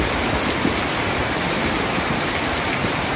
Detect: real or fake real